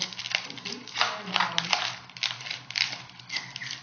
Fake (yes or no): no